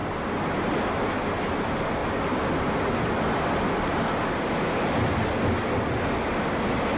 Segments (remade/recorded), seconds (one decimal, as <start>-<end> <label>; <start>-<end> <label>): 0.0-7.0 recorded